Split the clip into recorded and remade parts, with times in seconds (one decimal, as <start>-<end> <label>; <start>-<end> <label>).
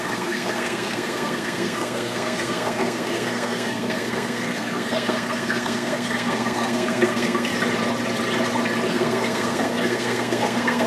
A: 0.0-7.5 remade; 7.5-8.9 recorded; 8.9-10.9 remade